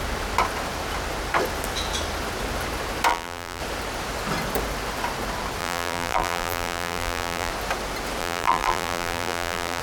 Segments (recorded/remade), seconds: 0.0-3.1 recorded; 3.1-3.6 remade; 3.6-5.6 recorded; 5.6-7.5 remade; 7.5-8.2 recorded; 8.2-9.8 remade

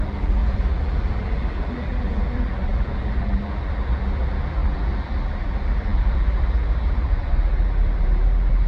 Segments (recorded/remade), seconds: 0.0-8.7 remade

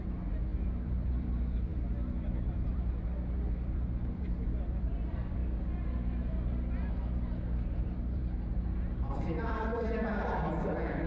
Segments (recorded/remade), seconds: 0.0-5.4 remade; 5.4-7.6 recorded; 7.6-8.2 remade; 8.2-9.1 recorded; 9.1-11.1 remade

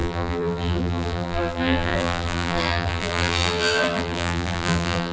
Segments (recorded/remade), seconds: 0.0-5.1 remade